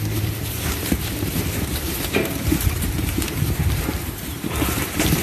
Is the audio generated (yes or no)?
yes